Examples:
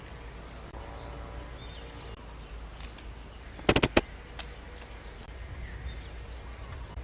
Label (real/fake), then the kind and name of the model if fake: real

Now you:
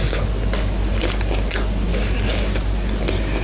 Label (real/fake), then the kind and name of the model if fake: real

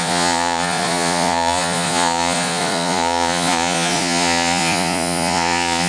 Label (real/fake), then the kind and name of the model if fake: fake, vocoder, Vocos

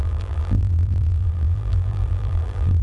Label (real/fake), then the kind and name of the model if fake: fake, vocoder, BigVGAN v2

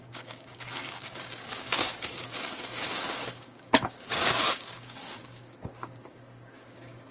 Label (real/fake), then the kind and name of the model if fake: fake, codec, DAC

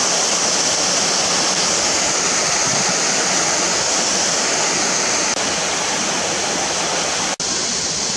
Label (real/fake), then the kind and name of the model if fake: real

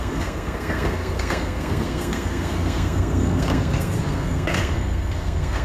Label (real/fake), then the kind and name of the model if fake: fake, codec, SNAC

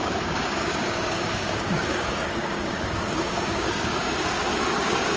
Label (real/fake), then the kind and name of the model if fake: fake, codec, DAC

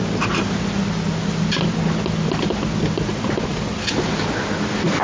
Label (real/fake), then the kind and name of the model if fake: real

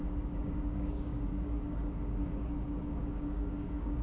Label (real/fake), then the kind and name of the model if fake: fake, codec, DAC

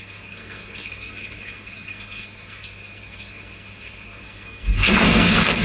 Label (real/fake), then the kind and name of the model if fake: fake, codec, SNAC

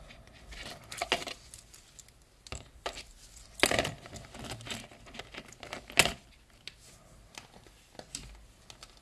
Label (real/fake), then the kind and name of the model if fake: real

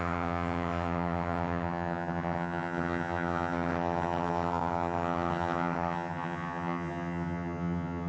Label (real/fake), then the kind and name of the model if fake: fake, vocoder, HiFi-GAN